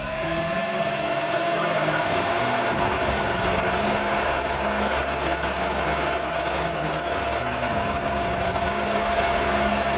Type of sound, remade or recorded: remade